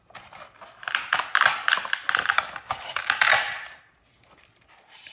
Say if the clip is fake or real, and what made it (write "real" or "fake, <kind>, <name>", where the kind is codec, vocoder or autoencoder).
real